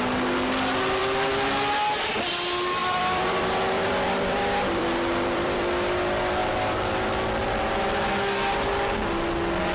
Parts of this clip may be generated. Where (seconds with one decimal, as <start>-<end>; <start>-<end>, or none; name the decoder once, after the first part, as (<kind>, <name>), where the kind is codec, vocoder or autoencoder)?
1.0-1.5 (vocoder, BigVGAN v2); 2.8-5.7